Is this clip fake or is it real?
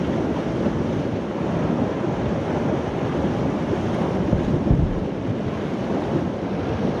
real